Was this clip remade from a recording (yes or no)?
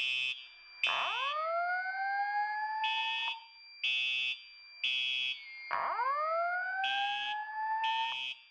no